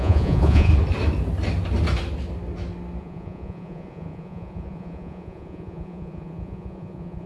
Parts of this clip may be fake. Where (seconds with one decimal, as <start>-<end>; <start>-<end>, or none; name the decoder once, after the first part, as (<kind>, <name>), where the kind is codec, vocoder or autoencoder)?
0.0-0.7 (vocoder, Vocos); 3.0-7.3